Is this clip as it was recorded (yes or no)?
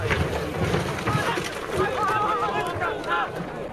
yes